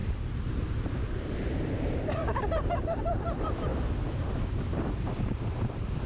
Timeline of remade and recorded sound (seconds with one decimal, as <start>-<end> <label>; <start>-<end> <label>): 0.0-3.7 remade; 3.7-4.5 recorded; 4.5-6.1 remade